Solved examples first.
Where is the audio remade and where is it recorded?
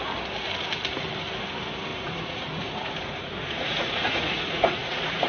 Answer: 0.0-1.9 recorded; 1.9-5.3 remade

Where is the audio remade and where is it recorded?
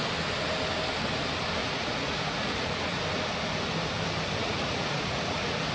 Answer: 0.0-1.6 recorded; 1.6-3.0 remade; 3.0-4.4 recorded; 4.4-5.7 remade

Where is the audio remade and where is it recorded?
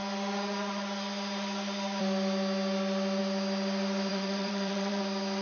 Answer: 0.0-4.1 recorded; 4.1-5.0 remade; 5.0-5.4 recorded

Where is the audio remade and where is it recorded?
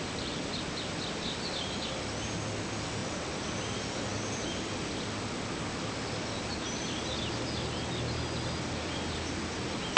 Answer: 0.0-10.0 recorded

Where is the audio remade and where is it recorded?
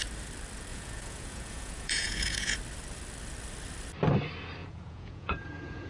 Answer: 0.0-0.7 recorded; 0.7-2.6 remade; 2.6-4.6 recorded; 4.6-5.9 remade